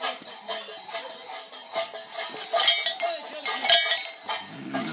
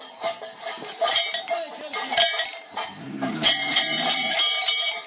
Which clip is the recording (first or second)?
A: first